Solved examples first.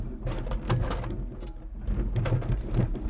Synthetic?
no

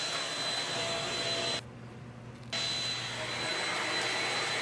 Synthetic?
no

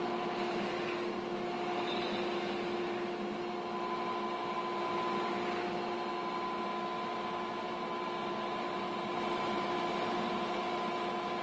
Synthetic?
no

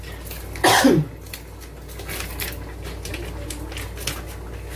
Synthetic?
no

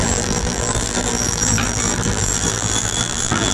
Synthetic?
yes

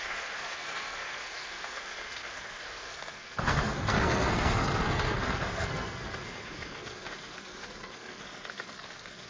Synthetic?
yes